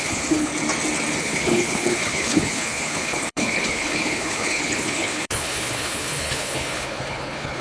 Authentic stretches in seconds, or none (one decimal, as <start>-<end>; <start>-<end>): 0.5-1.2